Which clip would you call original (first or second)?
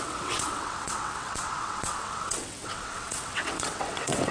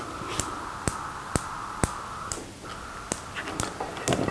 second